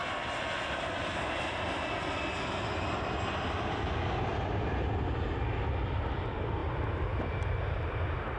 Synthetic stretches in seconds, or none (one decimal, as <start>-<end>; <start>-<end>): none